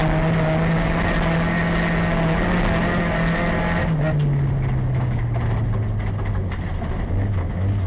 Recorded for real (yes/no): yes